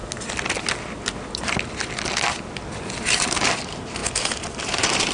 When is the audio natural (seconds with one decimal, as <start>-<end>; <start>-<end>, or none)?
0.0-3.1; 4.0-4.6